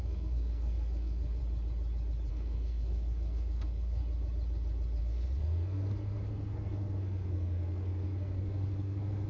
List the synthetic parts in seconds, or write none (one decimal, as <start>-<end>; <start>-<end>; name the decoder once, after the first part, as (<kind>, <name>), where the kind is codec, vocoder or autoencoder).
0.0-1.4 (codec, SNAC); 2.3-4.0; 5.0-9.3